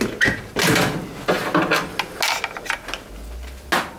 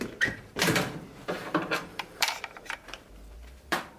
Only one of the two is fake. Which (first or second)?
second